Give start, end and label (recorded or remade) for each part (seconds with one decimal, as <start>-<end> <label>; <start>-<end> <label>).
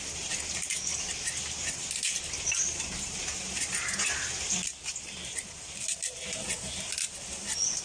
0.0-7.8 recorded